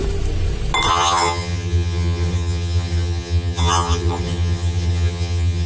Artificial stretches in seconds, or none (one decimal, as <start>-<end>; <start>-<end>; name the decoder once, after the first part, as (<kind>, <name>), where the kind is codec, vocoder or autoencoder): 0.9-5.7 (vocoder, HiFi-GAN)